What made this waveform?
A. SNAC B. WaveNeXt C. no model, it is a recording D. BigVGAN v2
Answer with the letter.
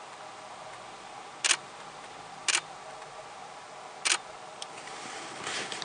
C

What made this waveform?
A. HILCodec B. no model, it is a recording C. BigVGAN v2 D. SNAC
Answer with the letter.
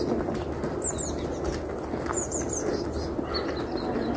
B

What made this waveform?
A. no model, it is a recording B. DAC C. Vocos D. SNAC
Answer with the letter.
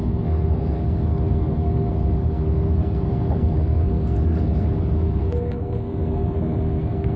D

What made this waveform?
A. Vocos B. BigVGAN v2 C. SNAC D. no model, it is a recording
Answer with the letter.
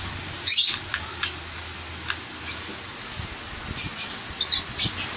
D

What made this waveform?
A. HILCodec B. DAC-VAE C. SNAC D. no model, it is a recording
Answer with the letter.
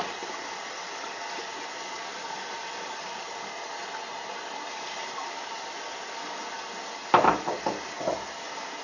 D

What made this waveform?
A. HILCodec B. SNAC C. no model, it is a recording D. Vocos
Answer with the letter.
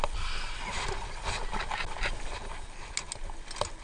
C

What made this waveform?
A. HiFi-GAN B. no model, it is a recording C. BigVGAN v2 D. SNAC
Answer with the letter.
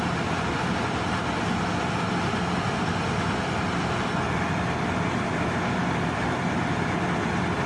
B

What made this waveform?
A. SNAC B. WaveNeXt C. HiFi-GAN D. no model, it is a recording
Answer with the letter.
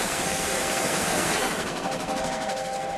A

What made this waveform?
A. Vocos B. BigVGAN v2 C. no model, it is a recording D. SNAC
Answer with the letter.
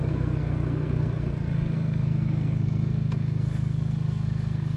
D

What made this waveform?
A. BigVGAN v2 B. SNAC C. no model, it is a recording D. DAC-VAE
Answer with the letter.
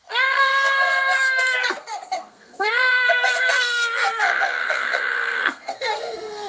B